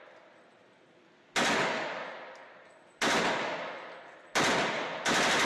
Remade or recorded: recorded